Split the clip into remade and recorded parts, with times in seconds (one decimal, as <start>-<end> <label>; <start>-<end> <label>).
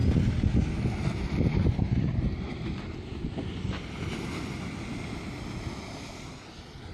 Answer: 0.0-6.9 recorded